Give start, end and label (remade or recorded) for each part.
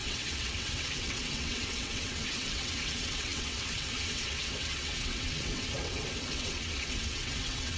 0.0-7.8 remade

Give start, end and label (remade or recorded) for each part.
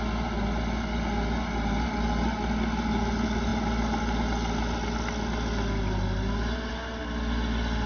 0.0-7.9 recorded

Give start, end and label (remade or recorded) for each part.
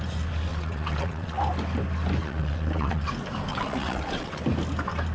0.0-0.5 recorded; 0.5-1.4 remade; 1.4-2.2 recorded; 2.2-3.1 remade; 3.1-3.5 recorded; 3.5-4.4 remade; 4.4-5.1 recorded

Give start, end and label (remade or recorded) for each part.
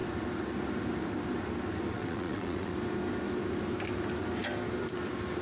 0.0-1.9 recorded; 1.9-2.7 remade; 2.7-5.4 recorded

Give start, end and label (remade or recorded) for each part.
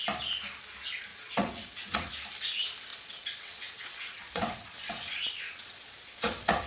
0.0-1.1 recorded; 1.1-2.1 remade; 2.1-2.9 recorded; 2.9-6.7 remade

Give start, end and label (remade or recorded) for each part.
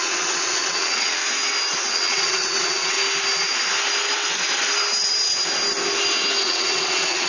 0.0-1.2 remade; 1.2-1.9 recorded; 1.9-3.0 remade; 3.0-6.4 recorded; 6.4-7.3 remade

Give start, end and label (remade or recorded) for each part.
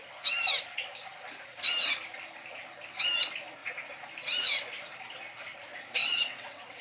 0.0-6.0 recorded; 6.0-6.8 remade